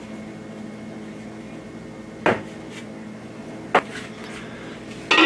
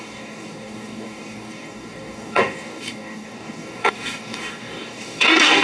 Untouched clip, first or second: first